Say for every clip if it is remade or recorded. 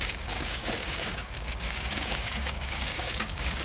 remade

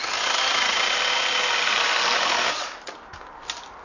recorded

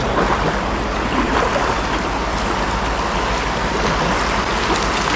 recorded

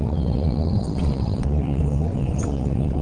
remade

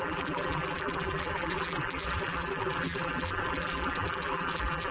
remade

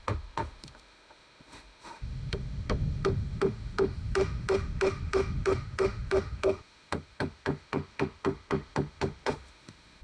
remade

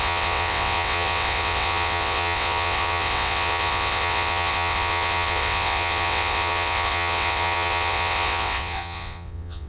remade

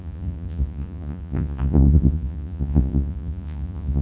remade